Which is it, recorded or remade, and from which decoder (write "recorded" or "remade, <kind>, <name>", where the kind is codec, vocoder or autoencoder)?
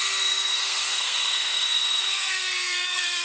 remade, codec, SNAC